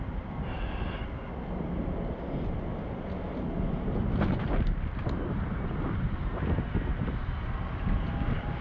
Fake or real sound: real